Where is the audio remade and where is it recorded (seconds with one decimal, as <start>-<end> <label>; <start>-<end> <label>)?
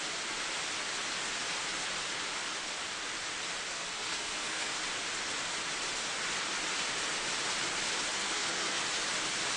0.0-3.7 recorded; 3.7-4.7 remade; 4.7-8.2 recorded; 8.2-8.8 remade; 8.8-9.6 recorded